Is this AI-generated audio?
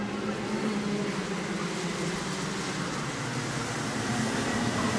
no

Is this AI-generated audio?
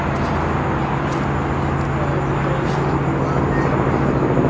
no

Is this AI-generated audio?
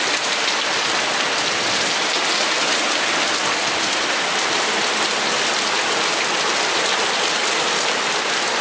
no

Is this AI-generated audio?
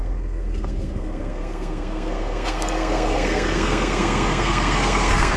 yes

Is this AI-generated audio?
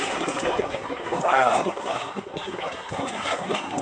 yes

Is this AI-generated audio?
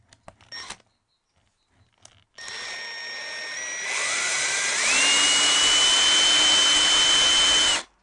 no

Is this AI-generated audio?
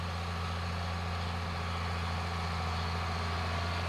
no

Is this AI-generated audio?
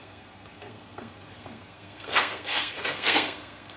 yes